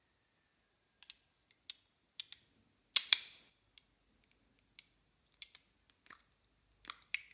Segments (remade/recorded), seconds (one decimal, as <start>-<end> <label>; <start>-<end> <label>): 0.0-7.3 recorded